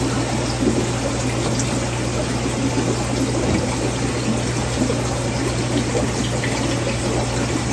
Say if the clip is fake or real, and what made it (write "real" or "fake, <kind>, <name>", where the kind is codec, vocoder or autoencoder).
real